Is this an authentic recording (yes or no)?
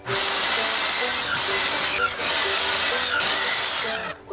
yes